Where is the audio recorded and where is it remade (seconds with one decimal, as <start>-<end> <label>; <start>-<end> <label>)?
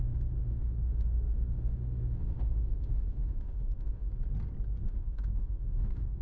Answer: 0.0-0.4 recorded; 0.4-4.1 remade; 4.1-4.8 recorded; 4.8-6.2 remade